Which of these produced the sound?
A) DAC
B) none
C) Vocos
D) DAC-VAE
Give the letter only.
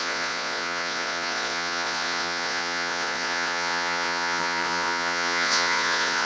C